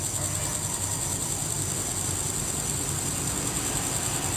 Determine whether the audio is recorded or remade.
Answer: recorded